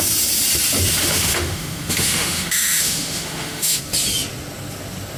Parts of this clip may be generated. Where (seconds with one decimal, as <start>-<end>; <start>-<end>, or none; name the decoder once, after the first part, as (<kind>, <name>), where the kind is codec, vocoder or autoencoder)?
1.0-3.8 (autoencoder, DAC-VAE)